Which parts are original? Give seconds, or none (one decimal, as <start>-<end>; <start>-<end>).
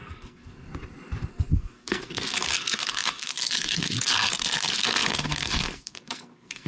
0.7-1.3